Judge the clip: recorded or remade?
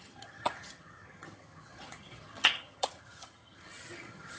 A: remade